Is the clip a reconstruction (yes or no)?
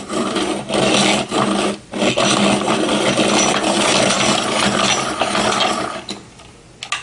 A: no